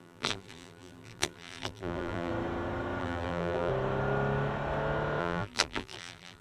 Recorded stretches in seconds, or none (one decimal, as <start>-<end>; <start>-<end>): 2.3-3.0; 3.7-5.2